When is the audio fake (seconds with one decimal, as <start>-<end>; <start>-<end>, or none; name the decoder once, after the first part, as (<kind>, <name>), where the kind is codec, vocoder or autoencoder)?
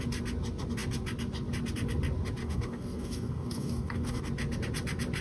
2.4-4.2 (codec, DAC)